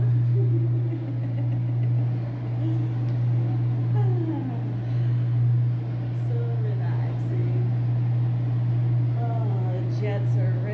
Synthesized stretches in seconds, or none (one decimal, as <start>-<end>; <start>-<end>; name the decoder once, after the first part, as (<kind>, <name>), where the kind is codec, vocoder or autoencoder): none